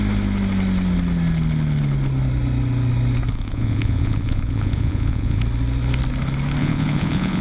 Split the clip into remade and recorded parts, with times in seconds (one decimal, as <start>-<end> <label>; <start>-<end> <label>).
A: 0.0-3.3 recorded; 3.3-5.4 remade; 5.4-6.6 recorded; 6.6-7.4 remade